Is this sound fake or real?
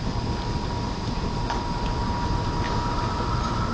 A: real